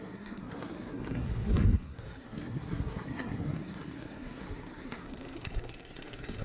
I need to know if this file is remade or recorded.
remade